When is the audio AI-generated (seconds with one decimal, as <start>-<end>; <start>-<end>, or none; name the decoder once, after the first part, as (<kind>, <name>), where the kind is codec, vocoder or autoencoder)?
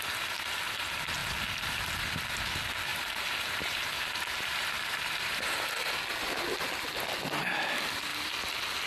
2.9-5.6 (vocoder, BigVGAN v2)